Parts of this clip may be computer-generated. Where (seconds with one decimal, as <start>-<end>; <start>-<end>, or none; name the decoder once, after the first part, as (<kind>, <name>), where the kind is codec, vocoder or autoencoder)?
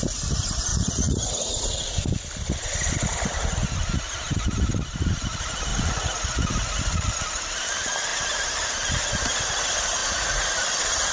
0.7-1.7 (vocoder, Vocos); 5.7-7.1; 10.0-10.6